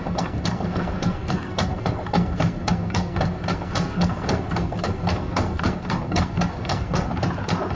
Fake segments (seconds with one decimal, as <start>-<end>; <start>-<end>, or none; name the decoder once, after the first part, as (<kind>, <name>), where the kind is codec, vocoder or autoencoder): 0.0-7.1 (codec, SNAC)